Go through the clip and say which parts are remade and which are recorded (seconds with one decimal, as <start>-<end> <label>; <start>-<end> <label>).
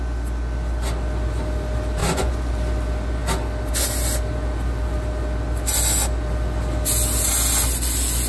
0.0-2.0 recorded; 2.0-2.5 remade; 2.5-8.3 recorded